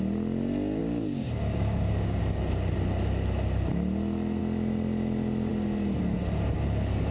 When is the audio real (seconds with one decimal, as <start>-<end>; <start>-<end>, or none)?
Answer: 0.0-0.8; 2.2-7.1